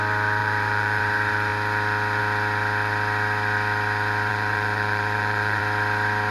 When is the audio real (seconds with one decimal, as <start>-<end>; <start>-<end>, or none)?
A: 0.0-0.4; 1.0-4.3; 5.6-6.3